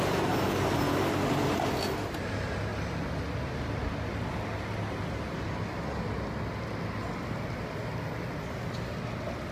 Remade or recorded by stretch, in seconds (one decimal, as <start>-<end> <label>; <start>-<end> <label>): 0.0-9.5 recorded